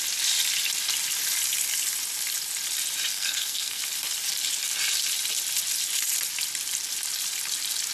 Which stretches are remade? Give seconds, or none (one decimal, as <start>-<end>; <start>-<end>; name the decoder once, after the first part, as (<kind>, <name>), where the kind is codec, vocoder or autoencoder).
3.1-3.8 (codec, SNAC)